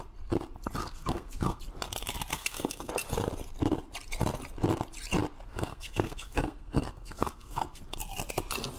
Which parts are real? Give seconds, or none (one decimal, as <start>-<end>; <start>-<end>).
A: 0.0-0.8; 1.6-2.3; 2.9-5.5; 7.8-8.8